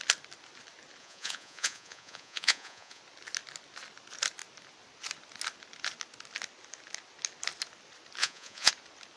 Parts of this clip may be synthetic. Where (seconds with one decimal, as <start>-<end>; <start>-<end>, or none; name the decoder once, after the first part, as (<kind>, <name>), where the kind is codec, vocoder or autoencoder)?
1.0-3.0 (vocoder, Vocos); 8.2-8.7